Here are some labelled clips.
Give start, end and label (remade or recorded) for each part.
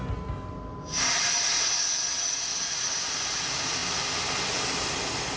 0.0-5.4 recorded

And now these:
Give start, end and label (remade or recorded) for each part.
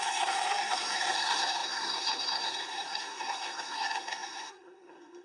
0.0-5.2 remade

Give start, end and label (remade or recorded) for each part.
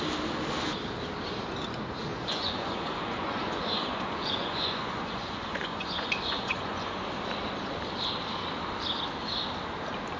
0.0-2.1 recorded; 2.1-7.0 remade; 7.0-10.2 recorded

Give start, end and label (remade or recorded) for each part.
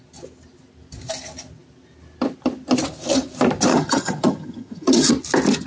0.0-3.7 recorded; 3.7-5.1 remade; 5.1-5.7 recorded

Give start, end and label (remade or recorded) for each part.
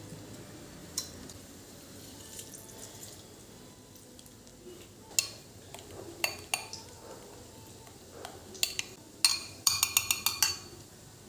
0.0-0.8 recorded; 0.8-2.5 remade; 2.5-9.3 recorded; 9.3-9.8 remade; 9.8-11.3 recorded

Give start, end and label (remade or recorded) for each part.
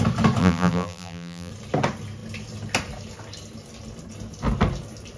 0.0-0.4 recorded; 0.4-1.5 remade; 1.5-5.2 recorded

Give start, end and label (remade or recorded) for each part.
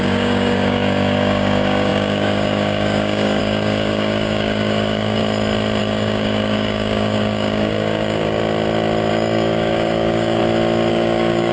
0.0-5.2 remade; 5.2-5.8 recorded; 5.8-8.4 remade; 8.4-9.1 recorded; 9.1-10.4 remade; 10.4-10.9 recorded; 10.9-11.5 remade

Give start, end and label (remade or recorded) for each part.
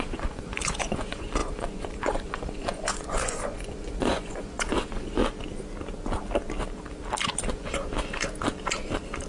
0.0-5.2 remade; 5.2-7.5 recorded; 7.5-7.9 remade; 7.9-9.3 recorded